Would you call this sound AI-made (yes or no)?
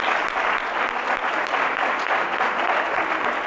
no